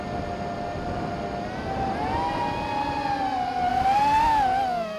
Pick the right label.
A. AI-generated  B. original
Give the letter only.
B